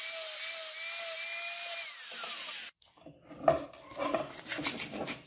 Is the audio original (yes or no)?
yes